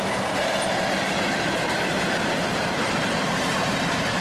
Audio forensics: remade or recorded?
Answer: remade